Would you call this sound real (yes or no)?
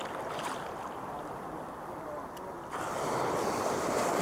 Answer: yes